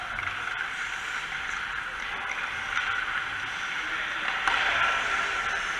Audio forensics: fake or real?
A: real